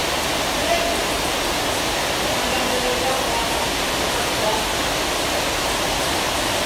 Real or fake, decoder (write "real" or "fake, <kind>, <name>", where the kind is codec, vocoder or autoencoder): real